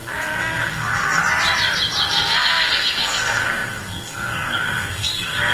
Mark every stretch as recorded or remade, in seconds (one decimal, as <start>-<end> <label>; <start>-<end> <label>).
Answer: 0.0-1.2 remade; 1.2-2.1 recorded; 2.1-5.5 remade